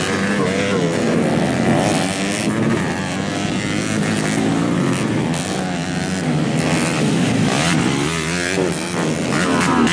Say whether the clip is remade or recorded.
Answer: recorded